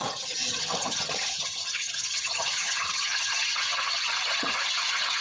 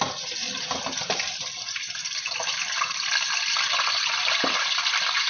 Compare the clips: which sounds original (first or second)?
second